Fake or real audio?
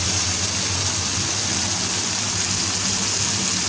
real